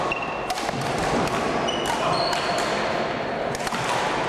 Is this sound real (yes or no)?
yes